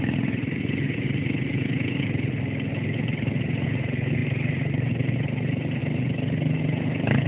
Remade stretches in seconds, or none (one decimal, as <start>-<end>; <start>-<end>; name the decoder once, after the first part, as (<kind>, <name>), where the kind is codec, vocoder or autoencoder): 2.7-3.3 (vocoder, BigVGAN v2); 4.2-4.9